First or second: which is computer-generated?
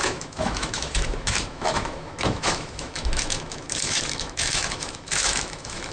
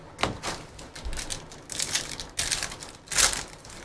first